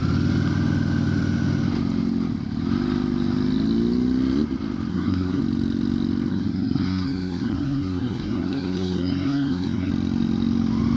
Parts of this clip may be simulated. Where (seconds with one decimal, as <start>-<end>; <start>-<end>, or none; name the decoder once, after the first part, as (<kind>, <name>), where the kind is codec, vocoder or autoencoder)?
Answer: 4.9-5.4 (codec, SNAC); 6.3-9.9